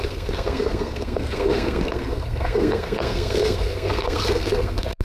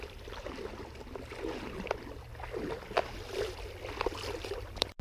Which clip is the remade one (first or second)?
first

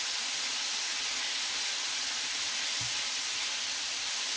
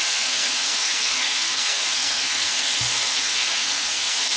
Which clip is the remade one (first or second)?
second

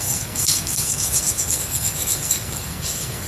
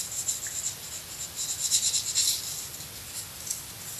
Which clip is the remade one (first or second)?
first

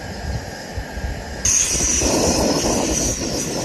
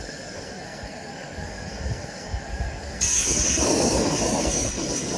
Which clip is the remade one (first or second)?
second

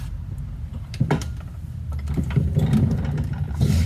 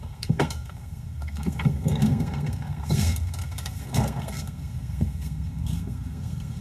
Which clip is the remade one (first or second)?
second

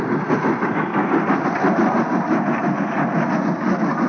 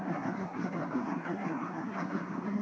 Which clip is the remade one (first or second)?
second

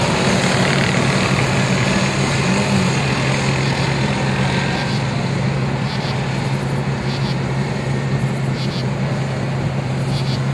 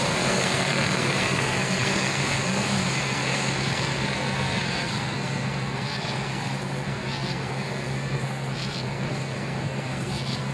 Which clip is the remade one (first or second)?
second